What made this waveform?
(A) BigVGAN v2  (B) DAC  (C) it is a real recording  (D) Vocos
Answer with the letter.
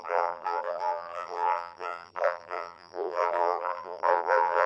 A